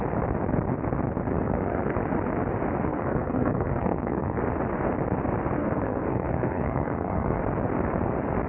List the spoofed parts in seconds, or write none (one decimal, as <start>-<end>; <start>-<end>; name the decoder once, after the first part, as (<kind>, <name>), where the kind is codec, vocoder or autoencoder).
1.3-2.0 (codec, SNAC); 2.9-4.4; 5.6-7.4